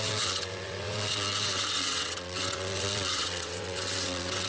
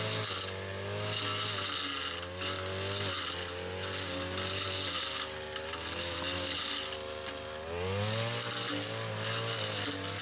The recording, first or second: second